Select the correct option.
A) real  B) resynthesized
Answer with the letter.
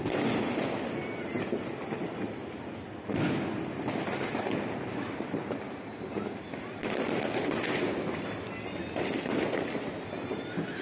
A